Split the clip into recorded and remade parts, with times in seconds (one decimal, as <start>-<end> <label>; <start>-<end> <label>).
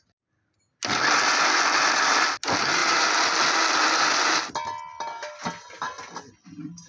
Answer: 0.0-6.9 recorded